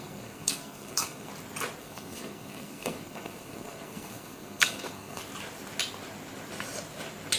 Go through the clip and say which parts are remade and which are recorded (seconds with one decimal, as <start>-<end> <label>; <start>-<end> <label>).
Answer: 0.0-1.3 remade; 1.3-1.8 recorded; 1.8-5.2 remade; 5.2-7.4 recorded